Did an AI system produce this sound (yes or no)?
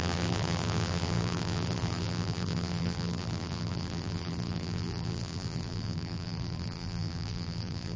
yes